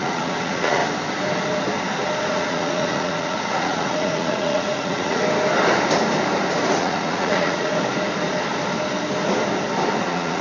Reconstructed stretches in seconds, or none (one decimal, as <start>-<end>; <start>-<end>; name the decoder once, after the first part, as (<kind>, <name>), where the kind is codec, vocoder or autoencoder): 0.0-0.8 (vocoder, Vocos); 2.3-5.2; 6.8-7.7; 10.0-10.4